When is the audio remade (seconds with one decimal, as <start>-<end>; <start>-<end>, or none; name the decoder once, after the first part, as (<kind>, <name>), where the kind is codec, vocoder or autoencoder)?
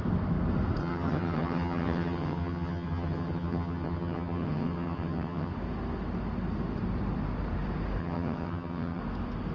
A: 0.8-5.5 (vocoder, HiFi-GAN); 8.0-9.0